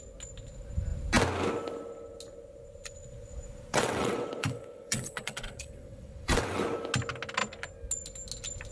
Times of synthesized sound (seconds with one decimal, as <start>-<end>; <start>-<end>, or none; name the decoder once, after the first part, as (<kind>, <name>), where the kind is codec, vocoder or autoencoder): 3.7-6.6 (vocoder, WaveNeXt)

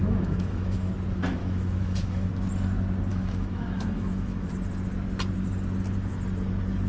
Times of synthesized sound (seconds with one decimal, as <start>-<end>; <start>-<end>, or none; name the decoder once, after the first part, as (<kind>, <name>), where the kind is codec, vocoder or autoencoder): 0.0-0.9 (autoencoder, DAC-VAE); 1.4-2.3; 3.1-4.5

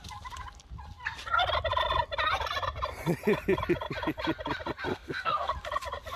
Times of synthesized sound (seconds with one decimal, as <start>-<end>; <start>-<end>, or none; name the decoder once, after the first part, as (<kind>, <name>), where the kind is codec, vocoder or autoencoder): 4.9-5.5 (codec, SNAC)

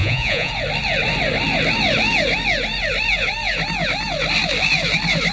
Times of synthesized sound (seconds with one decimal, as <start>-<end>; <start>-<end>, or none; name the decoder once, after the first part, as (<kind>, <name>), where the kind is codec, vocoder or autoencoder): 0.0-0.5 (vocoder, Vocos)

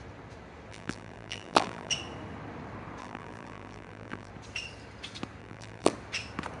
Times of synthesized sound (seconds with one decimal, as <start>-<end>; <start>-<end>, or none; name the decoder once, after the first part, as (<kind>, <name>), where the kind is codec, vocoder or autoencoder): 0.7-1.9 (vocoder, BigVGAN v2); 3.0-4.3; 5.4-5.9

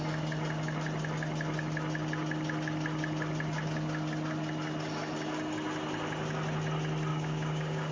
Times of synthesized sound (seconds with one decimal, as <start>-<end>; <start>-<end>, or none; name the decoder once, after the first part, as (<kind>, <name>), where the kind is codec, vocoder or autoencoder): 7.1-7.9 (codec, DAC)

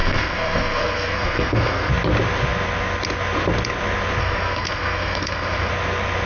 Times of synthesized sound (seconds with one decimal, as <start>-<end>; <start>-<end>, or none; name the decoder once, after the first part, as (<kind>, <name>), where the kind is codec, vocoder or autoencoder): 0.0-1.9 (codec, SNAC); 4.2-5.7

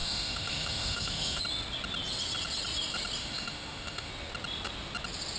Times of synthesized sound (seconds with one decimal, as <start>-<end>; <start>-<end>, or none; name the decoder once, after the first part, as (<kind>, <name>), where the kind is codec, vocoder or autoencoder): 0.0-1.4 (autoencoder, DAC-VAE); 3.2-4.1